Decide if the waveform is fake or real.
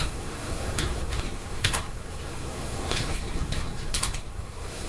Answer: fake